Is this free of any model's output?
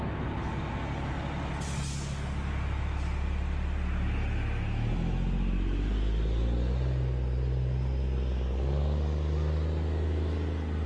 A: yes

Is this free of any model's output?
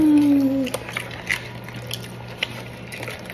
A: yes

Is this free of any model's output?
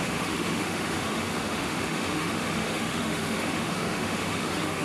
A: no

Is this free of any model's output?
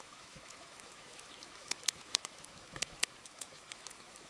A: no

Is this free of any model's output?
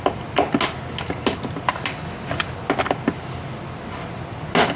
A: yes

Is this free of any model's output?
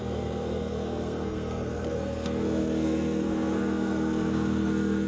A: no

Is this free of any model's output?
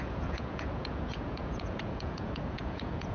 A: no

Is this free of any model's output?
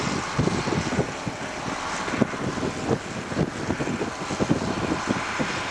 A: yes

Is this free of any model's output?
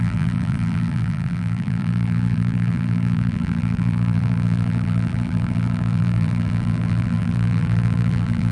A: no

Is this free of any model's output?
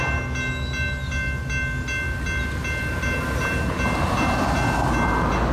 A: yes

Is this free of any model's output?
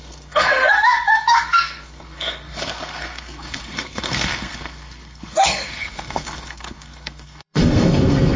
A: no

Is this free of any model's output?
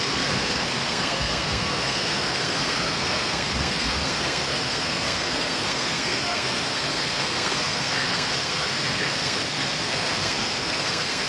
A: no